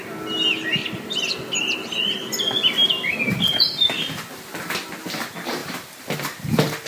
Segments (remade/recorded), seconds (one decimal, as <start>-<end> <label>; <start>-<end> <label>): 0.0-0.8 recorded; 0.8-1.3 remade; 1.3-6.9 recorded